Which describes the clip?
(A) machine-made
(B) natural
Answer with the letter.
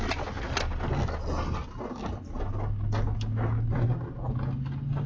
B